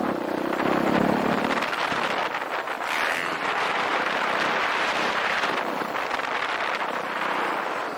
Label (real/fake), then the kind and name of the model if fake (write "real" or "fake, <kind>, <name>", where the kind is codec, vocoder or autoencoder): fake, vocoder, BigVGAN v2